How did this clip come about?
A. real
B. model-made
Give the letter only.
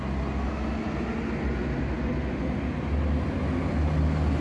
A